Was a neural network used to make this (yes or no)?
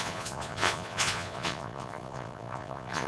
yes